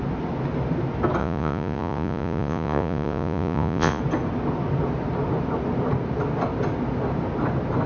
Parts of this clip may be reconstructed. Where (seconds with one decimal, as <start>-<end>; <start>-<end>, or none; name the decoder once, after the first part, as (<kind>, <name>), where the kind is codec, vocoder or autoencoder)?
1.2-4.0 (vocoder, Vocos)